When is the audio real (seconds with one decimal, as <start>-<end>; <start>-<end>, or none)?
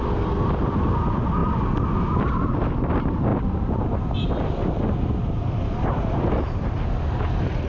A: 0.0-7.7